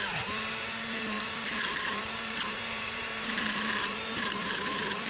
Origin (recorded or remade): remade